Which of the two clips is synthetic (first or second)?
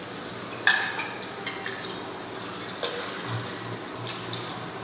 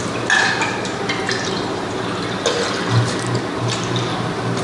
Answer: second